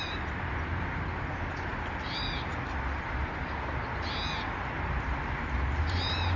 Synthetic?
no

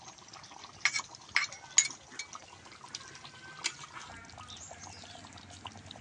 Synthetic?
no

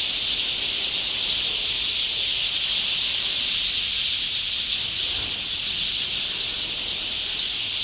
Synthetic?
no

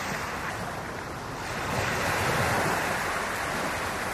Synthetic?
no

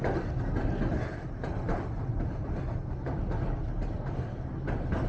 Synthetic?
no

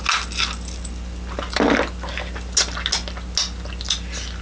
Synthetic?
no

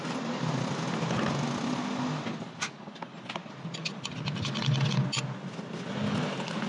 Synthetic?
no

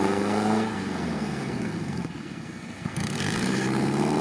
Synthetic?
yes